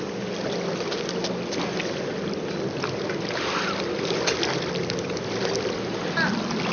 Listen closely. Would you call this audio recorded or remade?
recorded